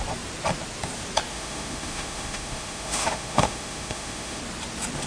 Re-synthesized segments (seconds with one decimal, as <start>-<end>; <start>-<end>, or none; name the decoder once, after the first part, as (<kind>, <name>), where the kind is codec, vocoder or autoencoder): 1.3-4.4 (autoencoder, DAC-VAE)